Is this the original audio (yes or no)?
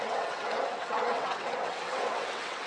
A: no